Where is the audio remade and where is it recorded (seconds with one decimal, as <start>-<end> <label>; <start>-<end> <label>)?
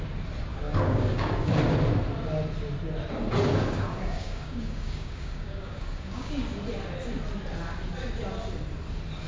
0.0-0.5 recorded; 0.5-1.5 remade; 1.5-3.5 recorded; 3.5-6.3 remade; 6.3-9.3 recorded